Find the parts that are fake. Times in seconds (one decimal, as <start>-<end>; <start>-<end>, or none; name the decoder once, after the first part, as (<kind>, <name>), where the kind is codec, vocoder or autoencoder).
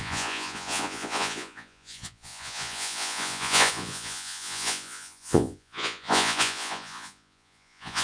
0.0-8.0 (vocoder, Vocos)